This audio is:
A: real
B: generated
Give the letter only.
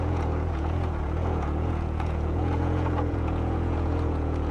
B